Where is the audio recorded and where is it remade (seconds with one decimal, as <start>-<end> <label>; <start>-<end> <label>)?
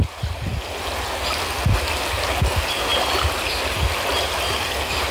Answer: 0.0-5.1 recorded